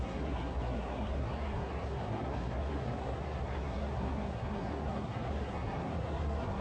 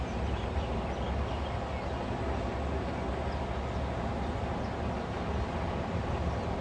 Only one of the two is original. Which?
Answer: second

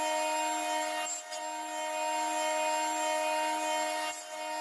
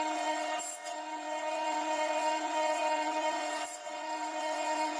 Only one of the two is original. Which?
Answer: first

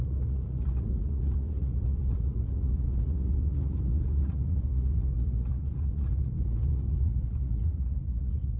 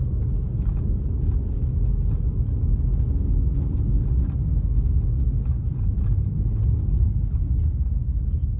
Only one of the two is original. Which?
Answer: second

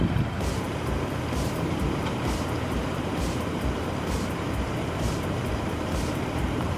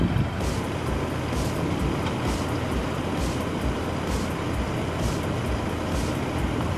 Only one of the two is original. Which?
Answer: second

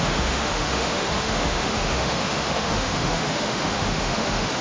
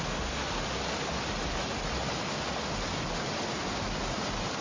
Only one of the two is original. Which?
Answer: second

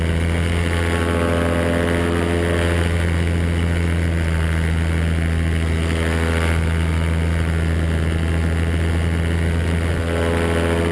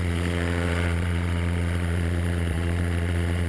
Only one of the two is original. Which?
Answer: first